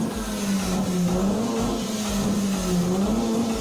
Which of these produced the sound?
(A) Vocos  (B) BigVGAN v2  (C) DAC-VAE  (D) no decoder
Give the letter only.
D